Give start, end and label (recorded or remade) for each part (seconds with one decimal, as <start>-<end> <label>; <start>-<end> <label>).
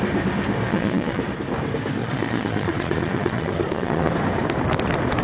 0.0-0.7 recorded; 0.7-1.2 remade; 1.2-2.0 recorded; 2.0-4.1 remade; 4.1-5.2 recorded